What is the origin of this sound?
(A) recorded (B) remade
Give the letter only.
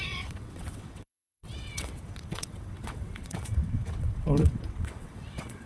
B